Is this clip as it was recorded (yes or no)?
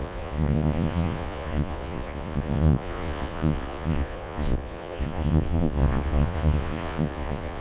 no